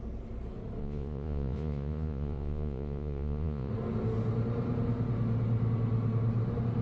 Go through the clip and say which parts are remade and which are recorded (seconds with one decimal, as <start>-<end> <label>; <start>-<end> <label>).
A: 0.0-0.8 recorded; 0.8-3.7 remade; 3.7-6.8 recorded